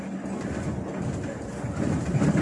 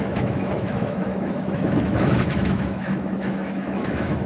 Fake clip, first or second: second